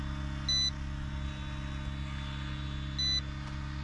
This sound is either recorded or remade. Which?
recorded